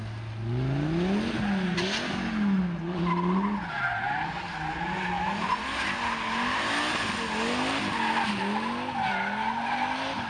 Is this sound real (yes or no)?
yes